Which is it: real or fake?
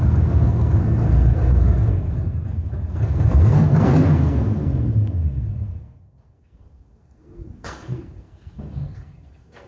fake